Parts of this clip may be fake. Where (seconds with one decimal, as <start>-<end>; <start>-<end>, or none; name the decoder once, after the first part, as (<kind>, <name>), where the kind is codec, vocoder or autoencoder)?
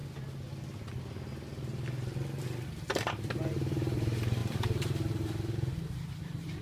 1.0-1.7 (vocoder, BigVGAN v2); 2.7-6.6